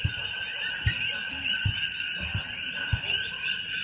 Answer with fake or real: real